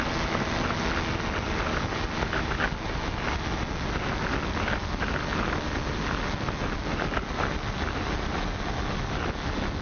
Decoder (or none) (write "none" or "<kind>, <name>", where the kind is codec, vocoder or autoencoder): none